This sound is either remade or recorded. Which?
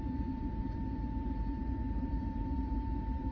remade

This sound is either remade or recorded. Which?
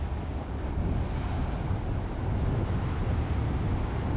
recorded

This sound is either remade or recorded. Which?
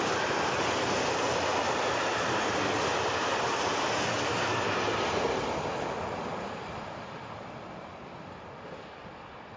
recorded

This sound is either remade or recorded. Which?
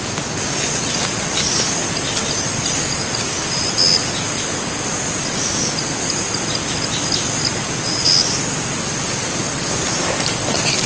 recorded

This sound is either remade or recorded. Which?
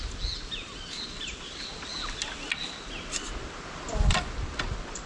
recorded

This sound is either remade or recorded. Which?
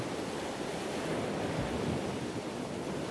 recorded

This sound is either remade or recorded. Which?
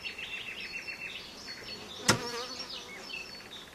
recorded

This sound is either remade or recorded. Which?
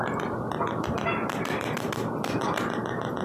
recorded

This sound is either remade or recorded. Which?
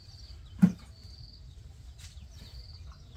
remade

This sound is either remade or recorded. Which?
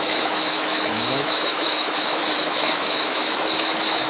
remade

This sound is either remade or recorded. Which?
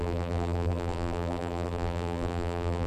remade